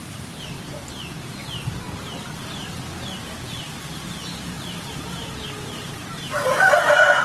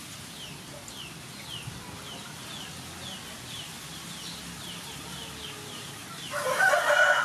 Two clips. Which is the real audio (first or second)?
second